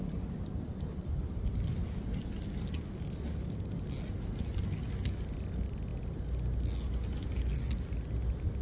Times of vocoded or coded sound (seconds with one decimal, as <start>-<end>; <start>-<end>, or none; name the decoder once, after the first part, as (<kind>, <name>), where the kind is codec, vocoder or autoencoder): none